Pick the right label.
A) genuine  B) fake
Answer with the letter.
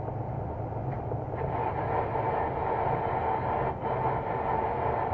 A